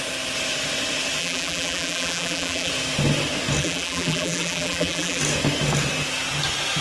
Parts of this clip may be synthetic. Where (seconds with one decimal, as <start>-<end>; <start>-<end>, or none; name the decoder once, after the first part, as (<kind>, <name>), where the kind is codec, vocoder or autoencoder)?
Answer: 1.2-2.7 (vocoder, BigVGAN v2); 3.6-5.2